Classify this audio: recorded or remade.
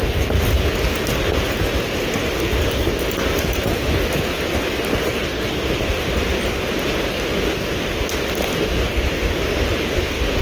recorded